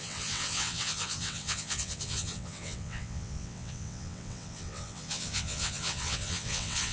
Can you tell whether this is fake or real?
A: fake